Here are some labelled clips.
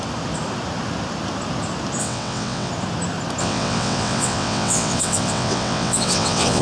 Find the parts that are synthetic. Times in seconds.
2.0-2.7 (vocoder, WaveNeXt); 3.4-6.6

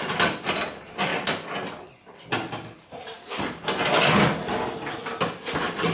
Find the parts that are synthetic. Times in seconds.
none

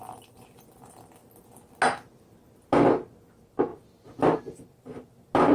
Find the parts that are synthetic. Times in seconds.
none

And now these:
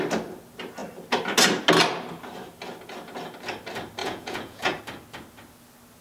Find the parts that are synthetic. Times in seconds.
4.0-4.8 (vocoder, Vocos)

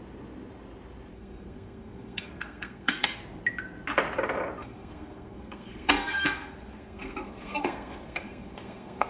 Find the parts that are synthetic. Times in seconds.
1.1-3.2 (codec, SNAC); 4.6-9.1

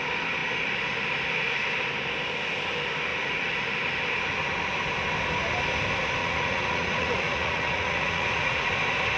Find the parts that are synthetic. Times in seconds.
3.1-3.6 (vocoder, Vocos); 6.2-8.7